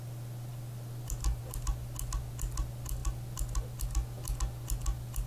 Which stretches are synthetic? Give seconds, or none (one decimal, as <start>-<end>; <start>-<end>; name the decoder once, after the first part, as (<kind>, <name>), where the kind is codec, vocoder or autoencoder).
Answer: none